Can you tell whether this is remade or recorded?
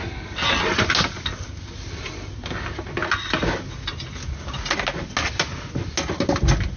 recorded